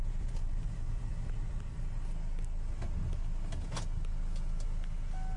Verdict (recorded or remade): recorded